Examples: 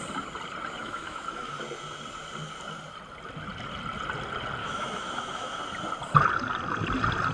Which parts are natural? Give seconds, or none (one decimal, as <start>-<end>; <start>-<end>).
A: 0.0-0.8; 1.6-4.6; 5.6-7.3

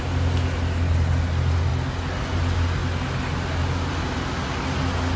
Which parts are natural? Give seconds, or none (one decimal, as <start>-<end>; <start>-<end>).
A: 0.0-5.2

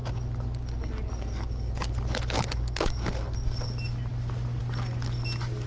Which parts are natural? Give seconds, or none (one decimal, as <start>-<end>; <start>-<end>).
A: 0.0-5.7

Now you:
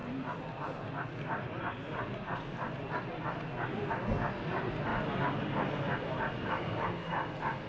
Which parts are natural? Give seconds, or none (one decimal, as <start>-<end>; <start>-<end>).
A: 0.0-7.7

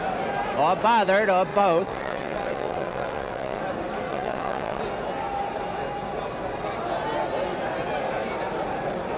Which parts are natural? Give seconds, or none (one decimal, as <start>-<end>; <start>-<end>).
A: 0.0-1.5; 3.6-4.1; 4.8-9.2

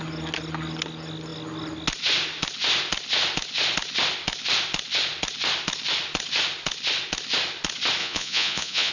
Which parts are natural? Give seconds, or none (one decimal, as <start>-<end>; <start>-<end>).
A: 0.0-8.0

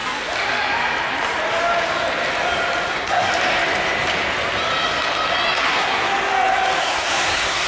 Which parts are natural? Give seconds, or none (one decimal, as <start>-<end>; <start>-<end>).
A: 0.0-2.9; 3.3-5.6; 6.1-6.8

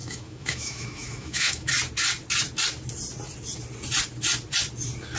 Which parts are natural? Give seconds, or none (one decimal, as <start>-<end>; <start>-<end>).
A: 1.7-5.2